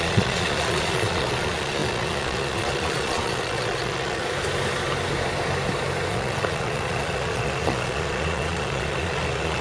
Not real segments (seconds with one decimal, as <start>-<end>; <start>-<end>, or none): 0.0-4.2; 6.1-9.6